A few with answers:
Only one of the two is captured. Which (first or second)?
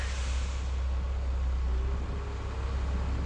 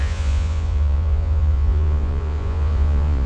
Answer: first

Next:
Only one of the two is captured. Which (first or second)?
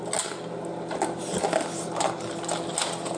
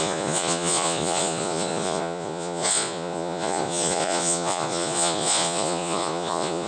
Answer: first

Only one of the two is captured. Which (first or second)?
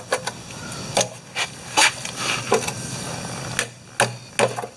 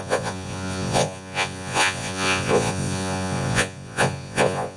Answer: first